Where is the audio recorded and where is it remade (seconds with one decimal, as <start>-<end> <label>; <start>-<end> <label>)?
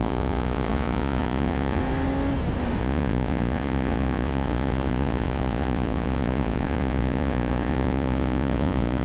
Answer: 0.0-1.8 remade; 1.8-2.8 recorded; 2.8-9.0 remade